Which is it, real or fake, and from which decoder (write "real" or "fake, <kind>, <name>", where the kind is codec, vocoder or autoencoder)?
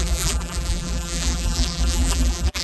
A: fake, vocoder, BigVGAN v2